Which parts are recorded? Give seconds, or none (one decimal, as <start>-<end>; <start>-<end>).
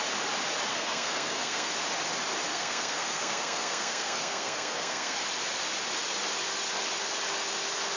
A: 0.0-0.7; 1.7-2.5; 5.2-8.0